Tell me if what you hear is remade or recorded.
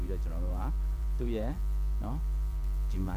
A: remade